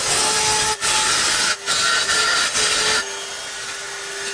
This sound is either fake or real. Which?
real